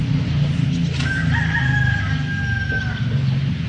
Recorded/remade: recorded